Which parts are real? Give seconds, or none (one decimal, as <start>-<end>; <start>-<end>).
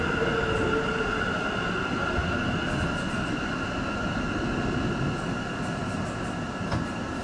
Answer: 0.0-5.8